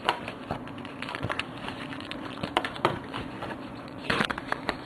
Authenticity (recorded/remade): remade